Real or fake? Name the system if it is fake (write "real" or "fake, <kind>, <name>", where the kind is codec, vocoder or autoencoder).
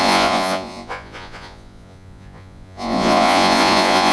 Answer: fake, vocoder, Vocos